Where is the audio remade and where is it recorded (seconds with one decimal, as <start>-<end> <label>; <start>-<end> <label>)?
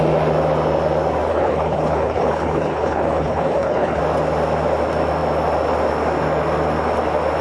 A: 0.0-1.3 recorded; 1.3-4.0 remade; 4.0-7.4 recorded